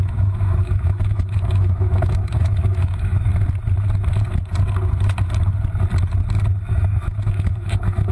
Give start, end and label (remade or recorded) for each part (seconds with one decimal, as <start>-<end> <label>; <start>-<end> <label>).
0.0-3.3 remade; 3.3-6.7 recorded; 6.7-8.1 remade